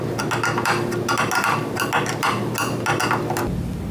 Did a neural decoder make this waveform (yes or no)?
no